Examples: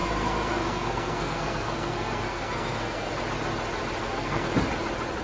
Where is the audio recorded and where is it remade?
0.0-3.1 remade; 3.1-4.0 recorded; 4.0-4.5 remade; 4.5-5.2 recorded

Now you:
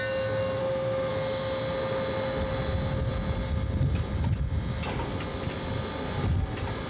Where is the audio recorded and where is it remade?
0.0-0.6 recorded; 0.6-1.1 remade; 1.1-6.9 recorded

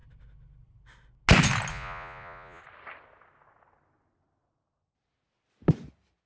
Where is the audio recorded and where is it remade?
0.0-1.7 recorded; 1.7-2.6 remade; 2.6-6.3 recorded

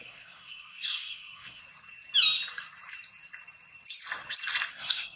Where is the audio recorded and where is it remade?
0.0-1.6 remade; 1.6-4.7 recorded; 4.7-5.2 remade

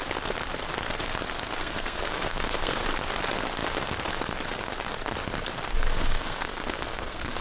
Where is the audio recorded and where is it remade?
0.0-1.6 recorded; 1.6-2.8 remade; 2.8-5.7 recorded; 5.7-7.4 remade